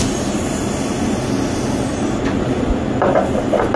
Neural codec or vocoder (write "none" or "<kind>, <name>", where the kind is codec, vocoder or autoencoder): none